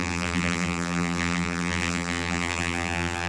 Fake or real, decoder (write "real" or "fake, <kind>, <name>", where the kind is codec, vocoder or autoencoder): fake, vocoder, BigVGAN v2